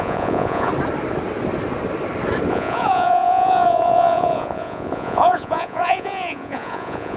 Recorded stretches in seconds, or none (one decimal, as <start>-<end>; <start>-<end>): 0.7-2.5